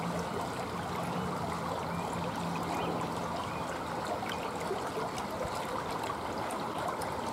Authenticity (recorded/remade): recorded